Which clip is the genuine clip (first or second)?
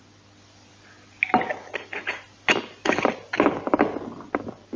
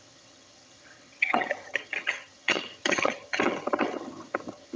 first